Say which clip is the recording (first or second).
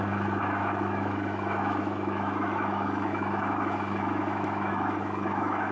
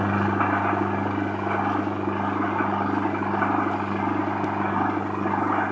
second